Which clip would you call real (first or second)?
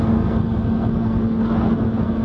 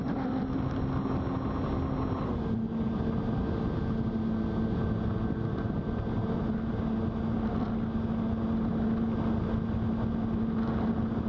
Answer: second